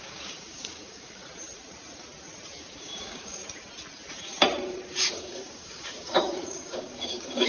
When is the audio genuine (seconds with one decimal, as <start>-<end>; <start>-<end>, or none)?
1.2-2.7; 3.4-5.0